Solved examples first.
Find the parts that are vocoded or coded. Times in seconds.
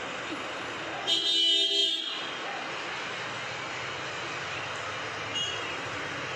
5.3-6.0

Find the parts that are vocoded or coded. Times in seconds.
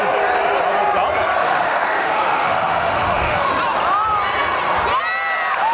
1.4-3.5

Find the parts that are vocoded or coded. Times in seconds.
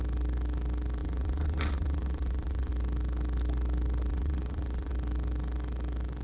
1.0-2.7; 4.1-4.9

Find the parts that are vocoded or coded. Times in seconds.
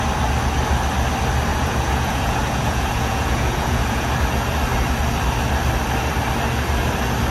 1.5-4.1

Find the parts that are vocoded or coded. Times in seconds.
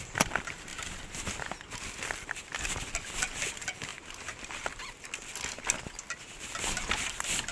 0.0-0.7; 2.0-3.9; 6.4-7.5